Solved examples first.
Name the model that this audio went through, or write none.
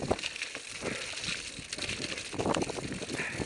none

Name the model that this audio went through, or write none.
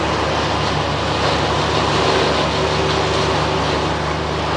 none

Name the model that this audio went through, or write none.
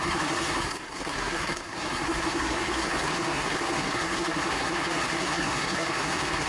codec, SNAC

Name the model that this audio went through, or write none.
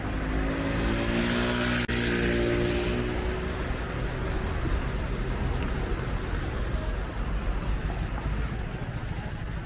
none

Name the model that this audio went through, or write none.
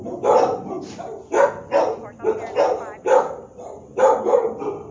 none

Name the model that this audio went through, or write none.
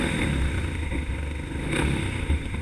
autoencoder, DAC-VAE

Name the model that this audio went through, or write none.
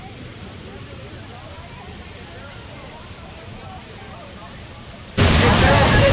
vocoder, BigVGAN v2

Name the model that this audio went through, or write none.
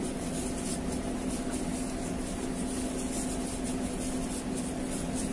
none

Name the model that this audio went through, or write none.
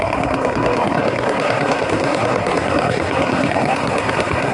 codec, SNAC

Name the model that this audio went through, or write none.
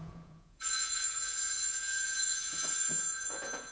vocoder, Vocos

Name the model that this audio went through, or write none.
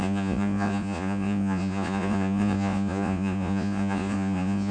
vocoder, Vocos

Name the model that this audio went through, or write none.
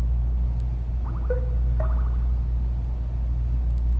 none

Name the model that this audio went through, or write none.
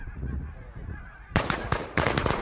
vocoder, Vocos